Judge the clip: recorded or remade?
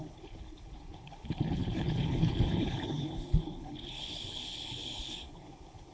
remade